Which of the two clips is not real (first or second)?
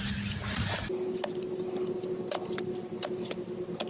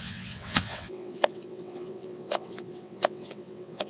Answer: second